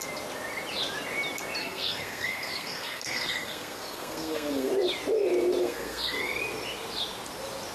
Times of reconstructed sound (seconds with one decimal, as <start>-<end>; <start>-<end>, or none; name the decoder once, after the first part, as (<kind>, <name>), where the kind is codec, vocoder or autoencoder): 1.6-4.7 (codec, SNAC); 5.6-6.4